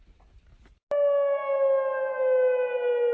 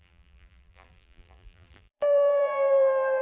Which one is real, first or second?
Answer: first